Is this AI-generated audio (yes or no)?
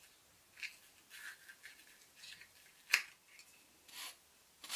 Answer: no